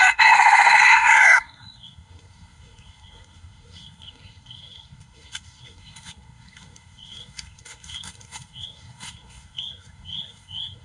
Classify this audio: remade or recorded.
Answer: remade